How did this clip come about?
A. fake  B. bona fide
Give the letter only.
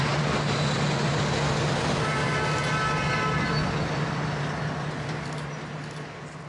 B